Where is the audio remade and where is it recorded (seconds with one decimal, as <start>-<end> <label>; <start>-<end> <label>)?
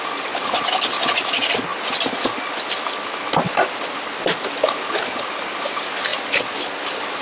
0.0-7.2 recorded